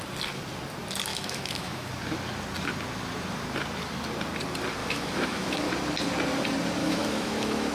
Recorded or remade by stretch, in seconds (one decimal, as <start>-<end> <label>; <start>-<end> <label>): 0.0-1.1 recorded; 1.1-1.9 remade; 1.9-4.8 recorded; 4.8-5.7 remade; 5.7-6.8 recorded; 6.8-7.7 remade